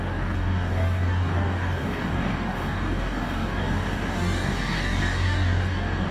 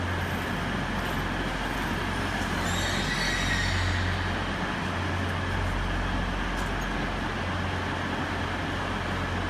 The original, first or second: second